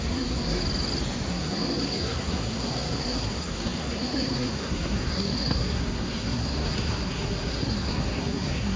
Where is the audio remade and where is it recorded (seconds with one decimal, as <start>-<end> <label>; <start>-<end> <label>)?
0.0-0.6 remade; 0.6-1.3 recorded; 1.3-8.8 remade